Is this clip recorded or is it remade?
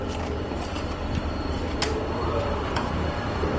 remade